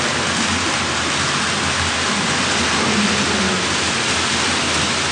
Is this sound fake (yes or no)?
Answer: no